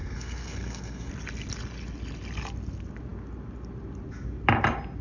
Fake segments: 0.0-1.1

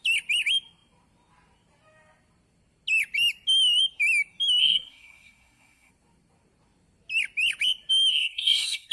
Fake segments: 4.6-5.9; 8.1-8.9

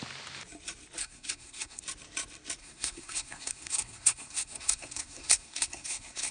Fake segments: 1.0-1.8; 2.6-6.3

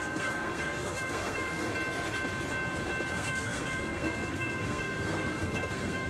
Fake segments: 0.0-1.7; 3.1-6.1

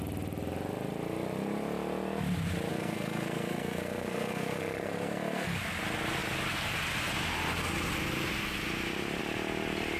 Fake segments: 2.7-5.6

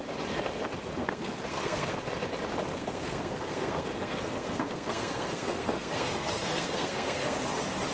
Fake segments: 0.9-2.0; 2.7-7.4